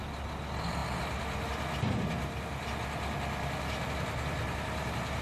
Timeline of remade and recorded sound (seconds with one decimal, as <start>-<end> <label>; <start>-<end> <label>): 0.0-5.2 recorded